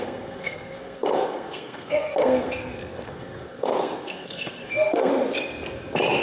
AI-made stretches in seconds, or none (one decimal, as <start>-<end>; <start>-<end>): 0.0-5.1